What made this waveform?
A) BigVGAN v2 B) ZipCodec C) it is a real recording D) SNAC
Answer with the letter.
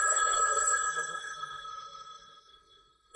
D